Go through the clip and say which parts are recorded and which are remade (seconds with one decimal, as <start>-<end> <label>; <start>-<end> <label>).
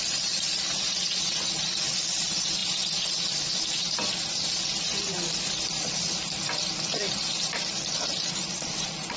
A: 0.0-2.6 remade; 2.6-5.5 recorded; 5.5-9.2 remade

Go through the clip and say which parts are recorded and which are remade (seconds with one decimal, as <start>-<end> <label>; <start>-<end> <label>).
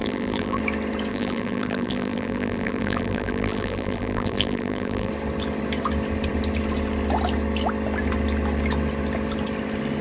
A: 0.0-0.6 remade; 0.6-1.1 recorded; 1.1-5.1 remade; 5.1-10.0 recorded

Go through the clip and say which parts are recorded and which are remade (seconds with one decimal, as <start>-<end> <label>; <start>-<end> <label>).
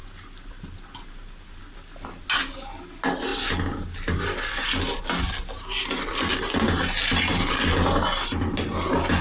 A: 0.0-9.2 recorded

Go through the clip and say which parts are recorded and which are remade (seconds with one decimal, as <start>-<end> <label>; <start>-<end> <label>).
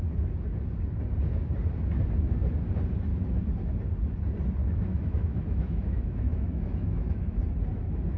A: 0.0-4.6 recorded; 4.6-7.4 remade; 7.4-8.2 recorded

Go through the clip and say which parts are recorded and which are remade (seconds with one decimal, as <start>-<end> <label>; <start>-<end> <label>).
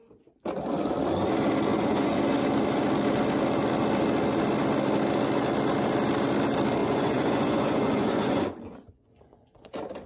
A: 0.0-1.7 recorded; 1.7-2.2 remade; 2.2-6.8 recorded; 6.8-9.7 remade; 9.7-10.1 recorded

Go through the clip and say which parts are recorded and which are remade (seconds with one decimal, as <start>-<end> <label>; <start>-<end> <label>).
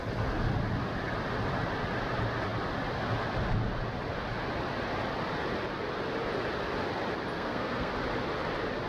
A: 0.0-7.3 recorded; 7.3-7.9 remade; 7.9-8.9 recorded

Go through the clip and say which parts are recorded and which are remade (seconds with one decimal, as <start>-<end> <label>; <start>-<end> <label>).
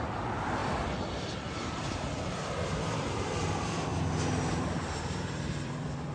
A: 0.0-3.9 remade; 3.9-4.5 recorded; 4.5-6.1 remade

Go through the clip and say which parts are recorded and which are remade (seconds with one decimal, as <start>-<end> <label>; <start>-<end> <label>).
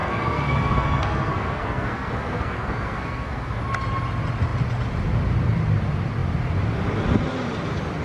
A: 0.0-3.6 remade; 3.6-8.0 recorded